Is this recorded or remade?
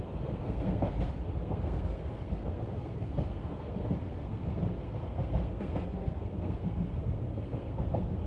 remade